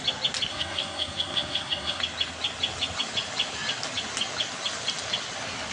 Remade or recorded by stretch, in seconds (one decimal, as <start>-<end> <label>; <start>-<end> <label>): 0.0-0.5 recorded; 0.5-2.0 remade; 2.0-5.7 recorded